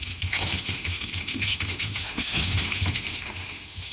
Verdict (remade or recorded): remade